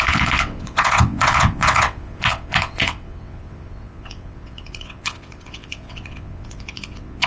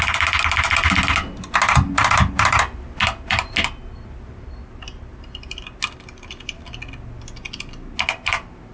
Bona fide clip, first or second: second